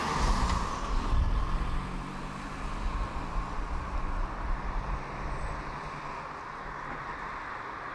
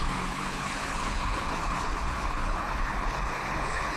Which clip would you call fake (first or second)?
second